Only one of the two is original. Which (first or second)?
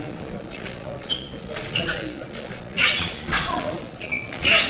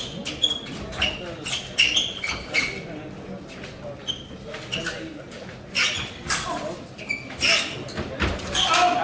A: second